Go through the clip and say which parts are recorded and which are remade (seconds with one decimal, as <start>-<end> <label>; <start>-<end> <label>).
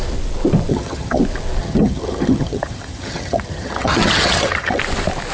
0.0-0.7 recorded; 0.7-1.2 remade; 1.2-1.6 recorded; 1.6-4.8 remade; 4.8-5.3 recorded